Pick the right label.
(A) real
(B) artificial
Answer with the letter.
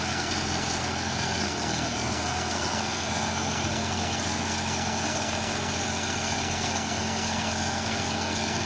B